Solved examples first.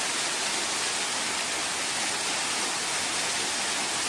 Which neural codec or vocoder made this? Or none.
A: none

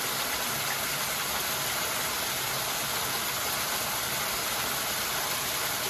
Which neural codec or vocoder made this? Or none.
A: none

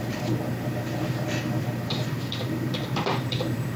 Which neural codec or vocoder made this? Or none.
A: vocoder, BigVGAN v2